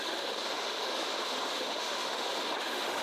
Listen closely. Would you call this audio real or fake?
fake